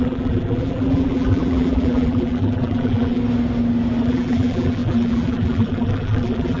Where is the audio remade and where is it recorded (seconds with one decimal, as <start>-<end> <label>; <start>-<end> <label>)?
0.0-3.2 remade; 3.2-4.0 recorded; 4.0-6.6 remade